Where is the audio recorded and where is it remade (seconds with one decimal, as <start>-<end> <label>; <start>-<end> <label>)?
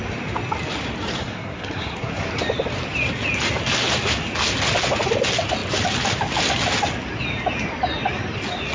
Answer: 0.0-1.2 recorded; 1.2-2.3 remade; 2.3-8.7 recorded